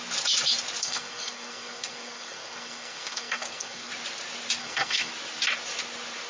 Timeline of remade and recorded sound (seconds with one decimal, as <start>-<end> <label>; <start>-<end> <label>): 0.0-0.8 recorded; 0.8-3.9 remade; 3.9-4.6 recorded; 4.6-5.1 remade; 5.1-6.3 recorded